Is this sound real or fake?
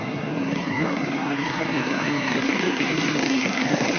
fake